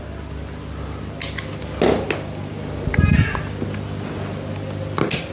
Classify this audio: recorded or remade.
recorded